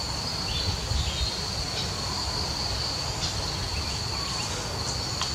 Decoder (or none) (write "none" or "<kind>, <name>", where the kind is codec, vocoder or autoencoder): none